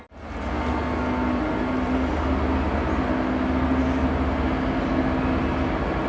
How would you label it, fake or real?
real